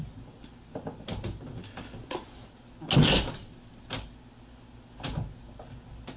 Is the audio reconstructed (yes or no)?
no